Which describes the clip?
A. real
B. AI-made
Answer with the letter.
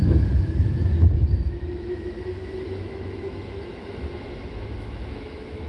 B